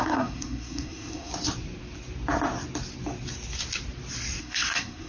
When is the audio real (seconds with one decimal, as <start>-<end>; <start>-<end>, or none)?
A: 1.3-4.4